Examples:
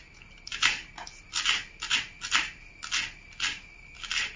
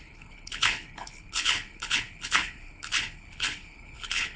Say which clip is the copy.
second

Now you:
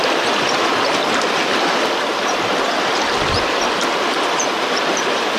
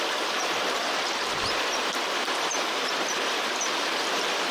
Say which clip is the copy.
second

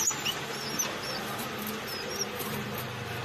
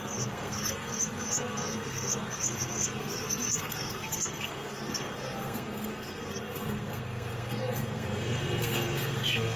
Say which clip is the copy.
second